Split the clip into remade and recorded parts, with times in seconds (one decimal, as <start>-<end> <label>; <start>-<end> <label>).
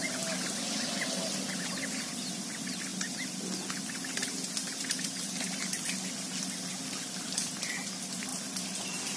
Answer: 0.0-9.2 recorded